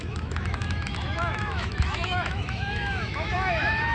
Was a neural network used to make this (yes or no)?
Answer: yes